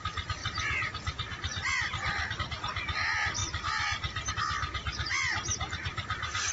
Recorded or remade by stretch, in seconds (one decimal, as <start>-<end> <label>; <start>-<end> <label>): 0.0-6.5 recorded